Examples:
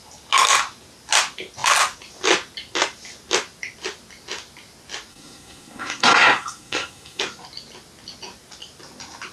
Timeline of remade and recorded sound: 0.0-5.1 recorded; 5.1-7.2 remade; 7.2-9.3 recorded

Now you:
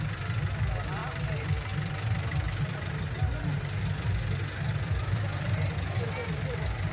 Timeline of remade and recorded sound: 0.0-6.9 recorded

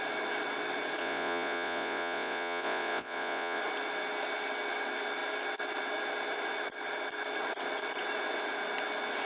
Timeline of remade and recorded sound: 0.0-1.0 recorded; 1.0-3.6 remade; 3.6-9.2 recorded

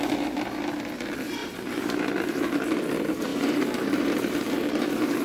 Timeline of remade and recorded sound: 0.0-1.4 recorded; 1.4-2.9 remade; 2.9-3.3 recorded; 3.3-5.2 remade

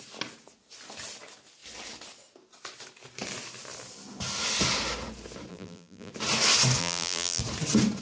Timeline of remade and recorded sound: 0.0-5.5 recorded; 5.5-6.1 remade; 6.1-6.8 recorded; 6.8-7.4 remade; 7.4-8.0 recorded